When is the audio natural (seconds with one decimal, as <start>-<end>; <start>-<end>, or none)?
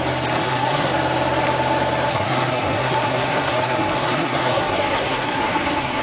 0.0-0.4; 0.9-2.1